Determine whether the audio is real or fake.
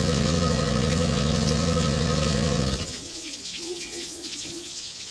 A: fake